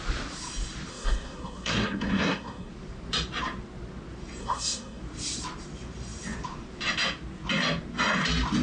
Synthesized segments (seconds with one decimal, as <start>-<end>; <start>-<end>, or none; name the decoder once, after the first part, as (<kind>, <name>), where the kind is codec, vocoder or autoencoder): 0.9-2.7 (codec, SNAC); 4.4-5.0